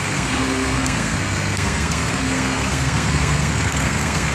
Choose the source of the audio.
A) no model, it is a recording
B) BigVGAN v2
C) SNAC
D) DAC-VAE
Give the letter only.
C